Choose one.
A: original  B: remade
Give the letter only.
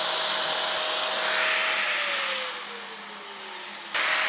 A